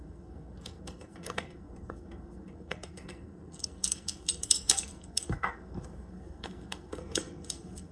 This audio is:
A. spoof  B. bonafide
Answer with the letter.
A